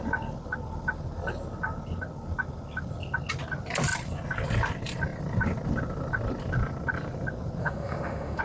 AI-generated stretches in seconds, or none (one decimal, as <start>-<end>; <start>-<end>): 7.6-8.4